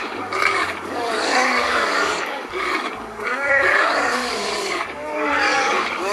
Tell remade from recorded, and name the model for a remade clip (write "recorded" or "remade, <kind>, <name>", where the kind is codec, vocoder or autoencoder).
remade, codec, DAC